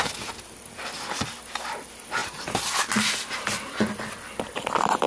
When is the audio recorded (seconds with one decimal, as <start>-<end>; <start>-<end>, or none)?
0.0-5.1